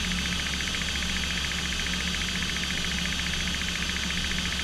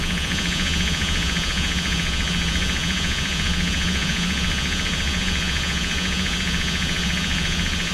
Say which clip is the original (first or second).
first